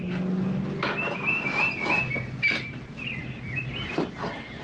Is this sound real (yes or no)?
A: yes